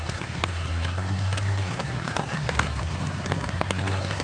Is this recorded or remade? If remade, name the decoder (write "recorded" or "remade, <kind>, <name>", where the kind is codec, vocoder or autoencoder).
remade, codec, SNAC